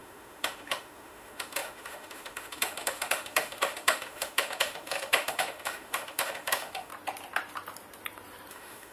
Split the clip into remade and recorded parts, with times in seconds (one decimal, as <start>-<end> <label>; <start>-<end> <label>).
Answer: 0.0-6.9 remade; 6.9-8.5 recorded; 8.5-8.9 remade